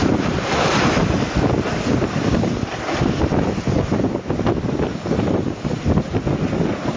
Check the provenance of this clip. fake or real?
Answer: real